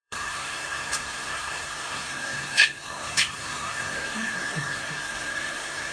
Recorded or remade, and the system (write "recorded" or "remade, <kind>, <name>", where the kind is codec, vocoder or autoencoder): remade, codec, SNAC